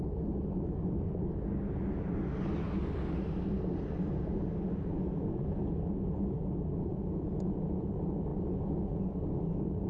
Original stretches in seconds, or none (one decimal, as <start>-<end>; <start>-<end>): 0.0-6.9; 7.9-9.9